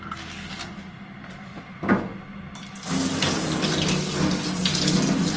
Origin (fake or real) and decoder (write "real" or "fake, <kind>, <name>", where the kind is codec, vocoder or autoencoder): real